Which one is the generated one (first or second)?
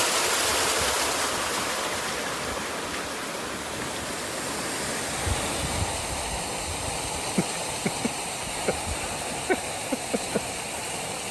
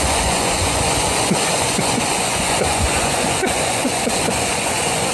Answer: second